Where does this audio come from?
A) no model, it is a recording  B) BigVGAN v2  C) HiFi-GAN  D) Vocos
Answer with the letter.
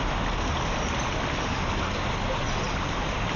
A